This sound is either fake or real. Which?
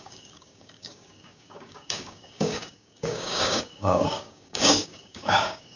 fake